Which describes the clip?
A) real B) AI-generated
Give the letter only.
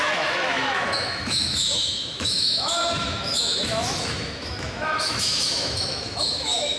B